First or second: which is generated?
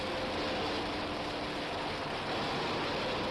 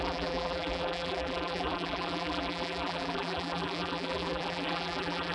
second